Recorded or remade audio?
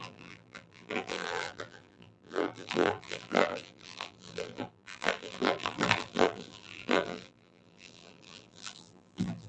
remade